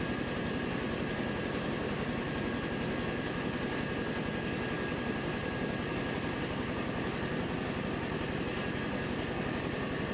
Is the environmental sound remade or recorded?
recorded